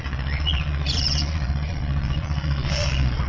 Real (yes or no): no